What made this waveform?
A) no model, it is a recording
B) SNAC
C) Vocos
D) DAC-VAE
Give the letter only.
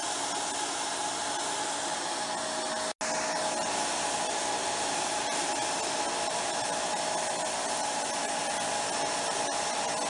A